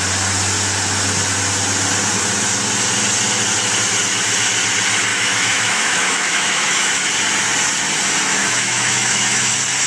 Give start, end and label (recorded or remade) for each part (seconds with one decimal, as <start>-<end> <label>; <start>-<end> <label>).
0.0-5.1 recorded; 5.1-7.1 remade; 7.1-8.4 recorded; 8.4-9.5 remade; 9.5-9.9 recorded